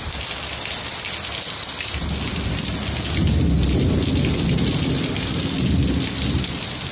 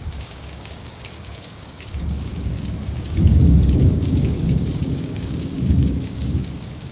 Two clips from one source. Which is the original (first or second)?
first